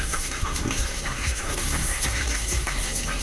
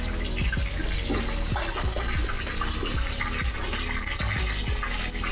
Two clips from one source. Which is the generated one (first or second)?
first